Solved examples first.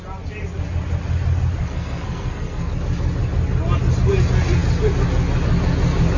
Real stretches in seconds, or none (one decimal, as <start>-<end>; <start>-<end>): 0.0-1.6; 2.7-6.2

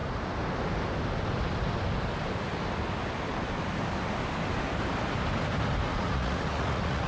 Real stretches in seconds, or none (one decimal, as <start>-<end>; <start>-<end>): 0.0-5.9

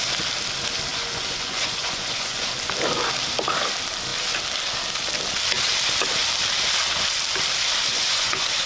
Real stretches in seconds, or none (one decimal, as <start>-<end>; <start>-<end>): 0.0-0.9; 2.5-7.9